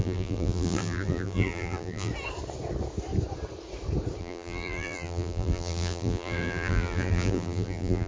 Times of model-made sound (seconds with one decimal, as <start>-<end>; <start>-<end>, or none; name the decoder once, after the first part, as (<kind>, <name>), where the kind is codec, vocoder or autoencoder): 0.0-2.1 (vocoder, BigVGAN v2); 4.2-8.1